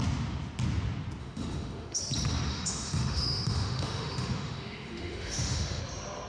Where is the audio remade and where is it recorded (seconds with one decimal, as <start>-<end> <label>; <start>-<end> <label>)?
0.0-1.2 recorded; 1.2-2.0 remade; 2.0-2.5 recorded; 2.5-5.8 remade; 5.8-6.3 recorded